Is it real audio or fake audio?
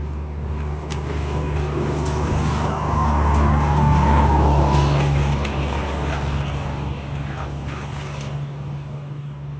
fake